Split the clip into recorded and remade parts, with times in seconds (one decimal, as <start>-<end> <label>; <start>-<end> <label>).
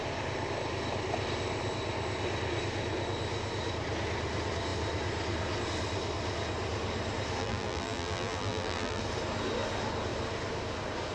0.0-7.4 recorded; 7.4-9.0 remade; 9.0-11.1 recorded